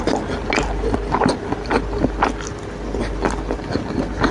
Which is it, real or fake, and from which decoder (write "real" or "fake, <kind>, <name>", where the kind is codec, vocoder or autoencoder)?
real